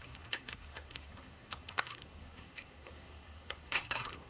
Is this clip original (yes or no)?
no